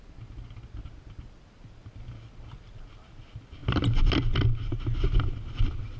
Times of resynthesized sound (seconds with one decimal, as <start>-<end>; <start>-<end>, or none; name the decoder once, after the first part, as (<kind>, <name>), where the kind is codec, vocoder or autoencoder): none